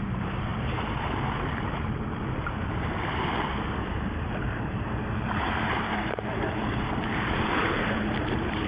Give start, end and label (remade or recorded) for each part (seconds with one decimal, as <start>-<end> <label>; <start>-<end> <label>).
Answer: 0.0-8.7 remade